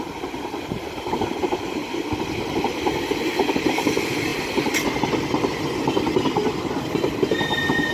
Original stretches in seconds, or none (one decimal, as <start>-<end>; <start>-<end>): 1.8-3.2; 4.3-6.8